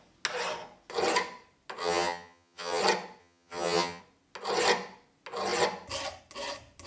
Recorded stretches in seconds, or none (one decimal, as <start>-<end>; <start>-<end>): 0.0-1.8; 2.8-3.2; 4.0-6.9